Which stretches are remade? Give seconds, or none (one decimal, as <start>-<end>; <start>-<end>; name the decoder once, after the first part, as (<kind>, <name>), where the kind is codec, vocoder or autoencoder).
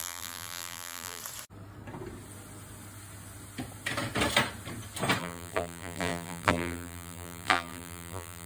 0.0-1.2 (vocoder, BigVGAN v2); 5.2-8.5